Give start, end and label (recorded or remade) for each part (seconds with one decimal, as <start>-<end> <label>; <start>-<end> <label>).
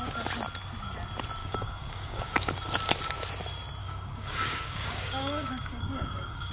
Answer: 0.0-1.4 recorded; 1.4-2.5 remade; 2.5-3.8 recorded; 3.8-6.5 remade